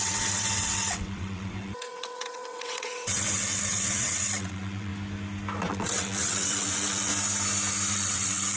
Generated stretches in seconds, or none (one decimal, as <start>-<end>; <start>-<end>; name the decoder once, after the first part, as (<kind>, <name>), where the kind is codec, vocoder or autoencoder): 0.0-4.9 (vocoder, WaveNeXt); 5.7-7.1; 7.9-8.6